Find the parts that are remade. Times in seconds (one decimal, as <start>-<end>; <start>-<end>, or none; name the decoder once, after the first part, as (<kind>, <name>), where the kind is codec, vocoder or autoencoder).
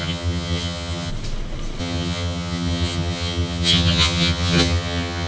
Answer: 0.0-1.1 (vocoder, HiFi-GAN); 1.8-5.3